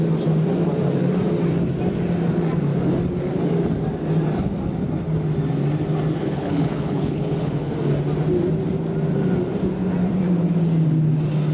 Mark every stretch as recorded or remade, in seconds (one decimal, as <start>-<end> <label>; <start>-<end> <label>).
0.0-6.2 recorded; 6.2-7.7 remade; 7.7-11.5 recorded